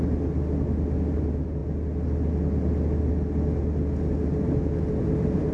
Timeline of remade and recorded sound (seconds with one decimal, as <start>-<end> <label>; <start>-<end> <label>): 0.0-5.5 recorded

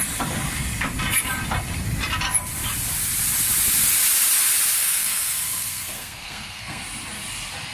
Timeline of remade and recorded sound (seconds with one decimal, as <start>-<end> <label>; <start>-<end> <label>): 0.0-4.8 recorded; 4.8-6.8 remade; 6.8-7.7 recorded